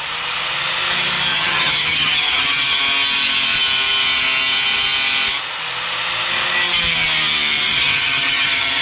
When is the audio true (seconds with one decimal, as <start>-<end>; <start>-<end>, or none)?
0.0-1.3; 2.8-7.7